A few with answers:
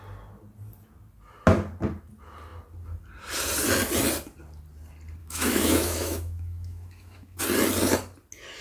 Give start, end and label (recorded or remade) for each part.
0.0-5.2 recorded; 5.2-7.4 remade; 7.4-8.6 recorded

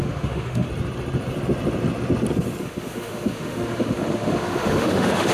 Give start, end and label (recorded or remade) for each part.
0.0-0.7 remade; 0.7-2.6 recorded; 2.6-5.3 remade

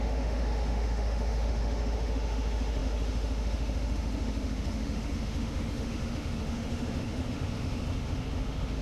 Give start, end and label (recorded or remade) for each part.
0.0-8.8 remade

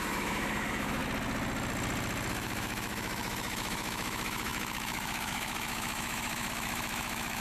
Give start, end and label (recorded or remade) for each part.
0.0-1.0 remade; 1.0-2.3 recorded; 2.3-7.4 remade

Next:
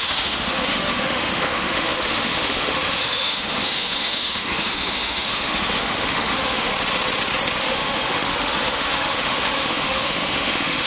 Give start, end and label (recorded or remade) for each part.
0.0-6.7 remade; 6.7-7.6 recorded; 7.6-10.9 remade

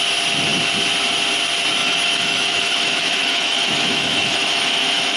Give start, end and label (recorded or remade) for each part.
0.0-1.8 recorded; 1.8-5.2 remade